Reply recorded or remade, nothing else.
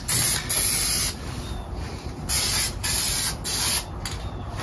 recorded